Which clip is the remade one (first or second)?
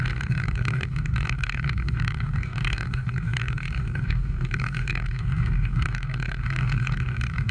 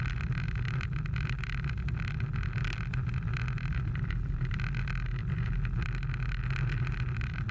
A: first